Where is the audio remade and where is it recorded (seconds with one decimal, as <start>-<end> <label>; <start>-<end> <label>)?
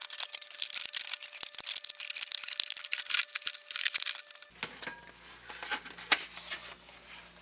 0.0-7.4 recorded